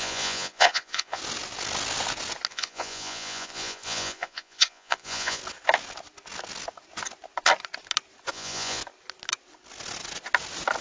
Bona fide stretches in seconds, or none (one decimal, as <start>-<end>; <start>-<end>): 1.2-2.5; 5.4-8.3; 8.8-10.8